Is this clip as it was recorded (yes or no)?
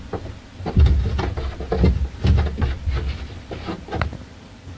yes